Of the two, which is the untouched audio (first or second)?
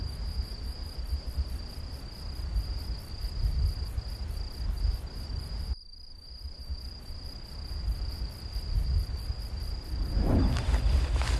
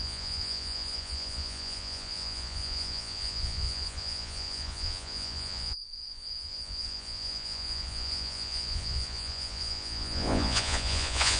first